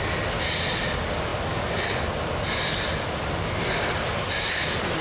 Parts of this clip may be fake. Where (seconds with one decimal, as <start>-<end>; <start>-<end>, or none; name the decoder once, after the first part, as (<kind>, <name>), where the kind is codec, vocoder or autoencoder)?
none